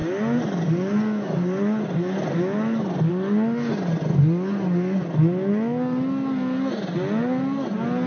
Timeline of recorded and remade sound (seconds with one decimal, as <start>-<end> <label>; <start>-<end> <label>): 0.0-8.1 recorded